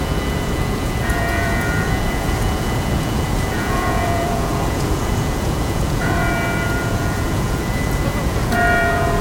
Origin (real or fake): fake